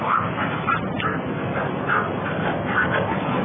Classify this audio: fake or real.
real